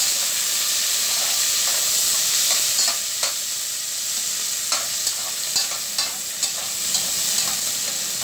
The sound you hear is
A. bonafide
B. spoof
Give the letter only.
A